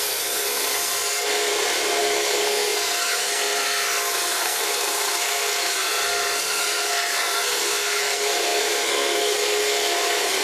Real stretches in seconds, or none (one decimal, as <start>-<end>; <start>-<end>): 1.5-2.0